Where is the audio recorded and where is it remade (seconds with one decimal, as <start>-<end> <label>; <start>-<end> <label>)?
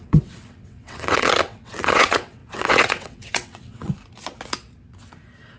0.0-3.9 remade; 3.9-5.6 recorded